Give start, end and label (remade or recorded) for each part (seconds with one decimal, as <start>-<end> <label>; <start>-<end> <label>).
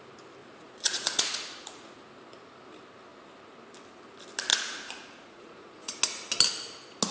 0.0-0.4 recorded; 0.4-2.1 remade; 2.1-4.5 recorded; 4.5-6.0 remade; 6.0-7.1 recorded